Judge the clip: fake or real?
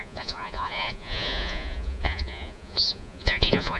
fake